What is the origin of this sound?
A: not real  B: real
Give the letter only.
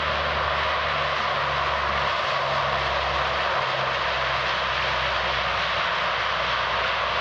B